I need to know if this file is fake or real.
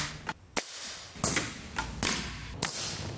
real